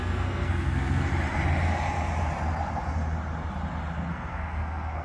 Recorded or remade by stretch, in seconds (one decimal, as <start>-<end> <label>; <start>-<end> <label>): 0.0-1.1 remade; 1.1-4.1 recorded; 4.1-5.0 remade